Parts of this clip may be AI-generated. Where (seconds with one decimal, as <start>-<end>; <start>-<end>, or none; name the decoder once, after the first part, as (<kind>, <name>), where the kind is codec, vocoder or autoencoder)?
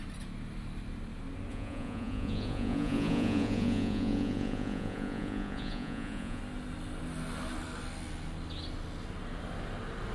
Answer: 1.5-6.4 (vocoder, Vocos)